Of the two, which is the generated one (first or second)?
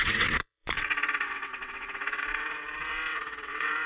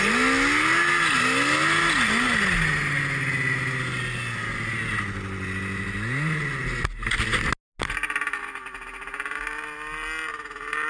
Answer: first